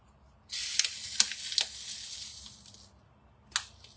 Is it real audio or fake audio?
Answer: real